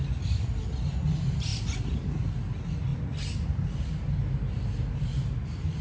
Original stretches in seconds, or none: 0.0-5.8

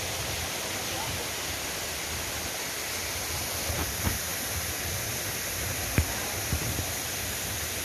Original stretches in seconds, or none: 0.0-7.8

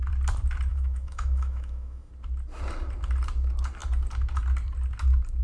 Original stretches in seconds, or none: 0.0-0.7; 2.1-5.4

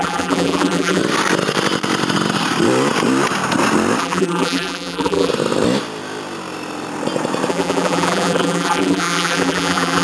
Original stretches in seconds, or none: 1.0-4.0; 5.3-7.5

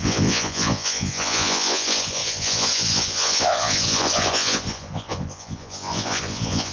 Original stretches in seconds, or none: none

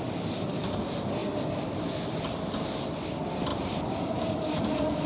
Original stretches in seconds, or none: none

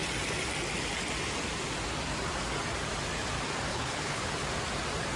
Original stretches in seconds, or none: 0.0-3.7; 4.3-5.2

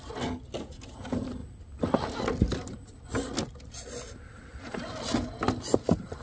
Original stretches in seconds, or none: 0.0-6.2